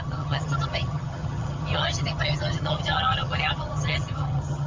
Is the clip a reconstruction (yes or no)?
yes